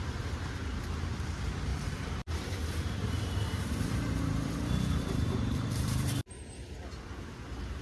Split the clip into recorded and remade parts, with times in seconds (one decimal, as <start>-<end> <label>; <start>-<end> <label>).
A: 0.0-1.7 recorded; 1.7-6.4 remade; 6.4-7.8 recorded